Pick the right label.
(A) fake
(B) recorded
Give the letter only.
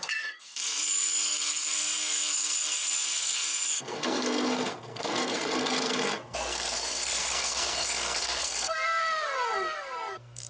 A